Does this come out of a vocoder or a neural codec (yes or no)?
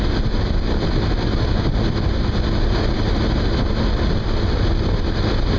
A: no